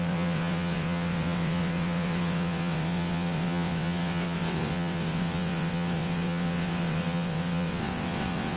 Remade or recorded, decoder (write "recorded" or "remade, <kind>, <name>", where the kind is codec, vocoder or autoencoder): remade, vocoder, WaveNeXt